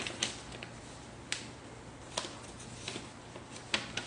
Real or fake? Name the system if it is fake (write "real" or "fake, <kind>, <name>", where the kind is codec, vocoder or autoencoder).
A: real